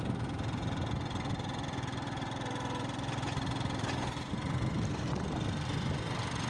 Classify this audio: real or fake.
fake